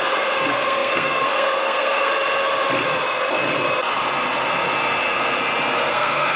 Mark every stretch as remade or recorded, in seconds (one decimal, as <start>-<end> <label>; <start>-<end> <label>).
0.0-2.1 remade; 2.1-5.9 recorded; 5.9-6.4 remade